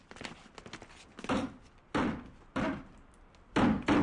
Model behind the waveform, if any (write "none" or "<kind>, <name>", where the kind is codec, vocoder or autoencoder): none